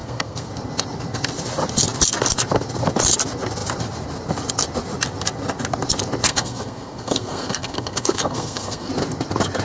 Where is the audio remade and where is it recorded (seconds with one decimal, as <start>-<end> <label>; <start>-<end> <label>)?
0.0-0.5 remade; 0.5-6.3 recorded; 6.3-8.9 remade; 8.9-9.6 recorded